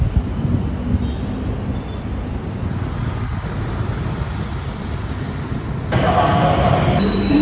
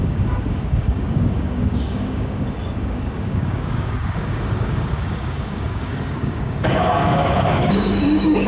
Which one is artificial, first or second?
second